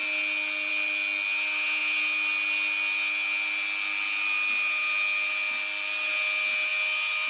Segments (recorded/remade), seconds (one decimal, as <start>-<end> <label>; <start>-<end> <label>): 0.0-7.3 recorded